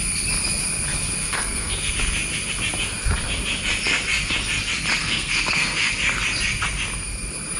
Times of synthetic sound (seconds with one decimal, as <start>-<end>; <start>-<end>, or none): 1.2-1.9; 5.0-5.9